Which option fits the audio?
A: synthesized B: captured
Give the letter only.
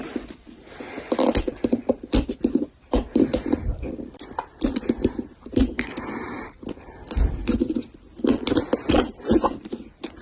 A